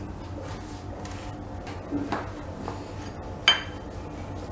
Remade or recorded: recorded